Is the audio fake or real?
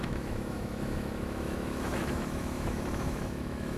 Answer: fake